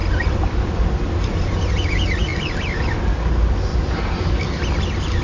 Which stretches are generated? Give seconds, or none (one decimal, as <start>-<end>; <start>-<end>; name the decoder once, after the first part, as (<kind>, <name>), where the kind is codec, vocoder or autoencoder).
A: 0.0-1.7 (vocoder, BigVGAN v2); 3.7-4.7